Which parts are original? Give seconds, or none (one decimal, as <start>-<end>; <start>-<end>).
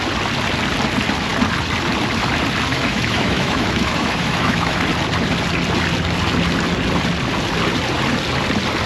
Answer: 0.0-2.7; 4.8-8.9